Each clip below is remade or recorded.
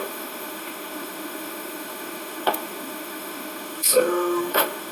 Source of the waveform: remade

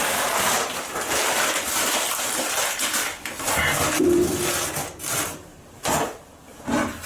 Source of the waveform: recorded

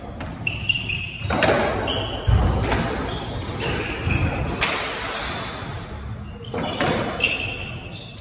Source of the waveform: recorded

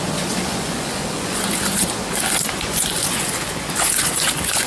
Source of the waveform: remade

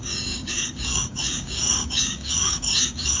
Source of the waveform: remade